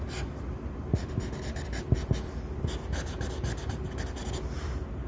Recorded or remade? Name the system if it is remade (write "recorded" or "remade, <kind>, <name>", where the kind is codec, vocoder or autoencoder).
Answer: recorded